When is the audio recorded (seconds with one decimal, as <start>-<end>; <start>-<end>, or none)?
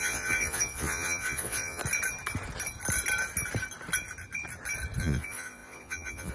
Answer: 1.8-5.0